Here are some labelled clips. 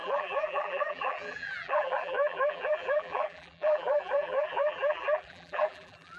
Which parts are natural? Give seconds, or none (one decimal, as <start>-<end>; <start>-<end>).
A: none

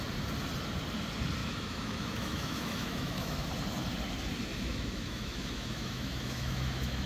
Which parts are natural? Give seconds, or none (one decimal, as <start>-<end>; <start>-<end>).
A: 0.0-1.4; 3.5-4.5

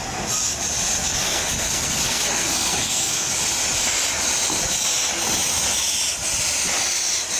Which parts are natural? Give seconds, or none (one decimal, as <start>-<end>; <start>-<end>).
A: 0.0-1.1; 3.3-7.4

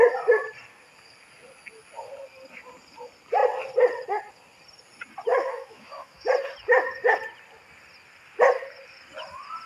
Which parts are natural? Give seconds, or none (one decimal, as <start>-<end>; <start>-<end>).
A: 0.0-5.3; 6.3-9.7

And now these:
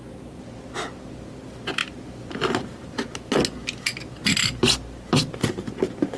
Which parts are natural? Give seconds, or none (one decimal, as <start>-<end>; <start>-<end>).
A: 0.0-6.2